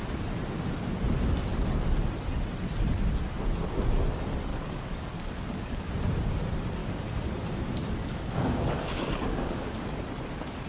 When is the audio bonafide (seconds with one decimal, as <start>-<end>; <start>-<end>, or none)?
0.0-4.5; 5.9-6.8; 7.3-8.0; 10.0-10.7